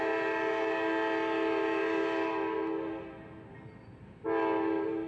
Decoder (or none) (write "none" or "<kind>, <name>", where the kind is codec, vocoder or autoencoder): none